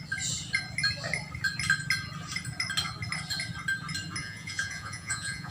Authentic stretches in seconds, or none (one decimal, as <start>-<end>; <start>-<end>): 0.0-4.2